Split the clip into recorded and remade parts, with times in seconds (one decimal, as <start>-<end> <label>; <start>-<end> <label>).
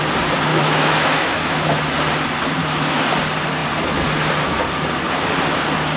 0.0-0.5 recorded; 0.5-1.8 remade; 1.8-2.6 recorded; 2.6-3.1 remade; 3.1-6.0 recorded